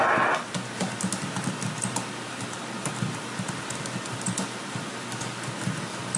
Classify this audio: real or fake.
real